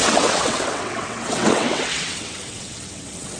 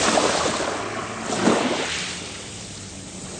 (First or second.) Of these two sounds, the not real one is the first